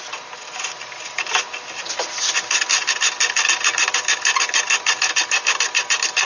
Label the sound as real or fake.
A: real